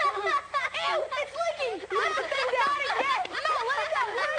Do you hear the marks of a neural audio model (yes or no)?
no